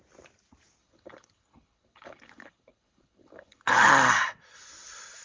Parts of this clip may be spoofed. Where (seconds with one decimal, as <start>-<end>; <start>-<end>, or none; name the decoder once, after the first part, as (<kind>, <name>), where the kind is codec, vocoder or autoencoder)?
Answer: 0.8-3.9 (codec, HILCodec)